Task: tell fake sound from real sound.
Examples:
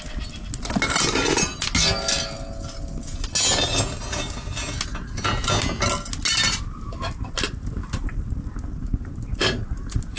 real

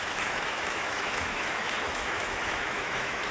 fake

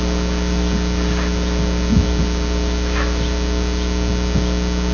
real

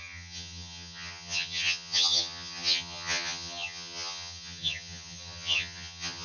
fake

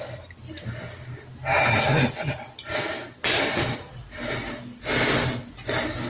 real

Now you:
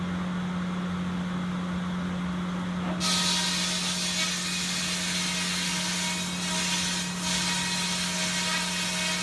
real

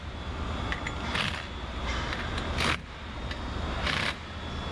real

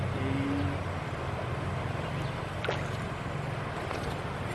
real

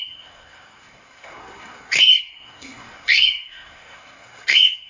fake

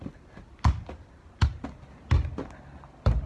real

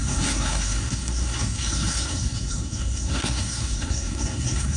fake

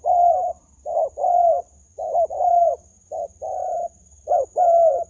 fake